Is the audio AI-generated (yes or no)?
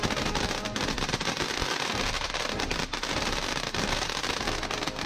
yes